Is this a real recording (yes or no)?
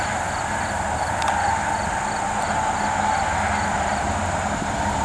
yes